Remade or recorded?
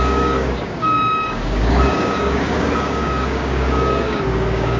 remade